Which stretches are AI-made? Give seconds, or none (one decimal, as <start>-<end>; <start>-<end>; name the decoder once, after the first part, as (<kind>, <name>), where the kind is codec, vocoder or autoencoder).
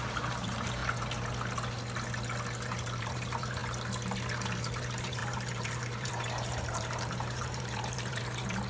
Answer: 0.0-0.8 (vocoder, BigVGAN v2); 3.0-3.6; 4.5-8.7